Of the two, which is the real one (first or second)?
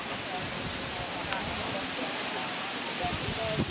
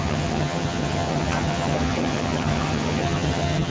first